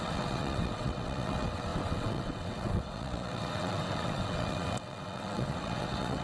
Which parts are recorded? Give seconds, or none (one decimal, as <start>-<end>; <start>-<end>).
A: none